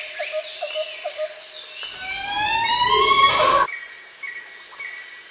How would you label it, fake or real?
real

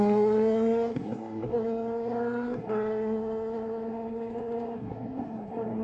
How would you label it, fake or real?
fake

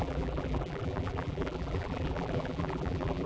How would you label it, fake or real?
fake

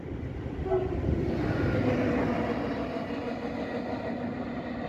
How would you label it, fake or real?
real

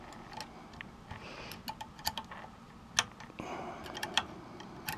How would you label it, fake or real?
real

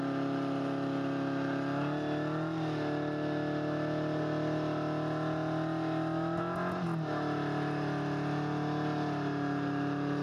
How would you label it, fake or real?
real